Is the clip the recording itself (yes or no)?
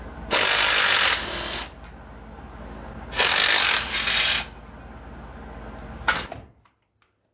yes